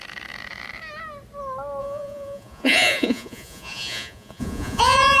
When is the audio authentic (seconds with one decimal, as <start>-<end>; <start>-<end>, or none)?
0.0-1.8